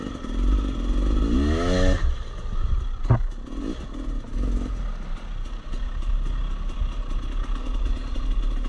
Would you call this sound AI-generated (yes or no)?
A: no